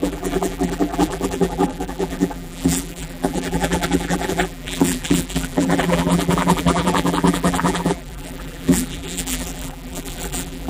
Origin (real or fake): fake